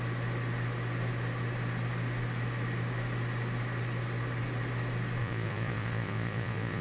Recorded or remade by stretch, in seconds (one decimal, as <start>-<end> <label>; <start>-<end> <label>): 0.0-5.2 recorded; 5.2-6.8 remade

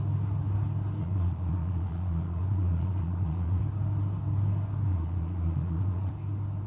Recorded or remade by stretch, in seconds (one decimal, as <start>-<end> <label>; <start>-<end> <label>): 0.0-1.0 recorded; 1.0-3.6 remade; 3.6-4.9 recorded; 4.9-6.1 remade; 6.1-6.7 recorded